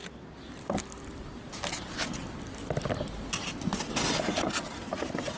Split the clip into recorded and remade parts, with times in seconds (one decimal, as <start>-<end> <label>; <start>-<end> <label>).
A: 0.0-5.4 recorded

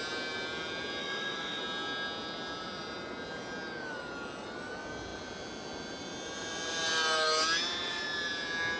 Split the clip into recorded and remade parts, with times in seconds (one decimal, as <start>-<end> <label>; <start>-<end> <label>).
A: 0.0-1.0 recorded; 1.0-1.6 remade; 1.6-8.8 recorded

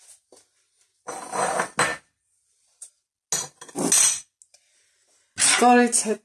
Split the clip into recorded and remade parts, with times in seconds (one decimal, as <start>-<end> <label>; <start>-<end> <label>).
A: 0.0-6.2 recorded